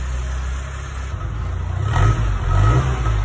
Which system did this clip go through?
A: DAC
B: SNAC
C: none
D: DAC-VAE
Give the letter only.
C